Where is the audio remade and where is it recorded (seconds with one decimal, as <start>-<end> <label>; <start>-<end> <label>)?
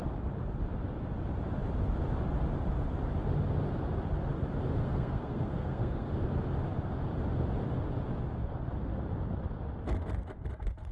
0.0-4.8 recorded; 4.8-6.1 remade; 6.1-10.9 recorded